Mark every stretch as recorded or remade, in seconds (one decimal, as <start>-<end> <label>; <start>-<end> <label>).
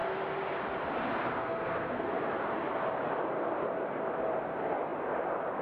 0.0-1.4 recorded; 1.4-2.1 remade; 2.1-5.6 recorded